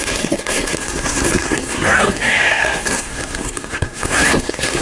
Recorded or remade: remade